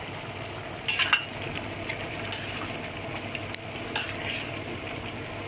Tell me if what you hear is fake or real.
real